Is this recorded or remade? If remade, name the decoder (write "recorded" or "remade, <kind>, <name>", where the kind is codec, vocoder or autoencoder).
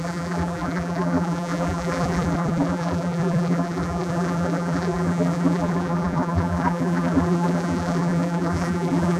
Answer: remade, vocoder, BigVGAN v2